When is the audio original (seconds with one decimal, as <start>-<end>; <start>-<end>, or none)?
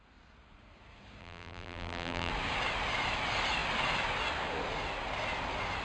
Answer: 0.0-1.2; 2.3-5.8